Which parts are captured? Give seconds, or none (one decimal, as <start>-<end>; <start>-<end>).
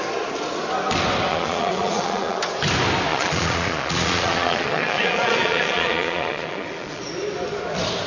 0.0-1.3; 2.4-3.1; 7.0-8.1